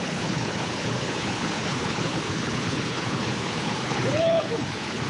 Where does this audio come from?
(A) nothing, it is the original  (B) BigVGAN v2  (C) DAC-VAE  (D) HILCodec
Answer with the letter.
D